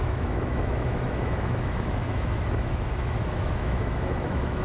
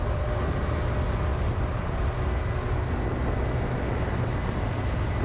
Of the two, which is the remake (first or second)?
first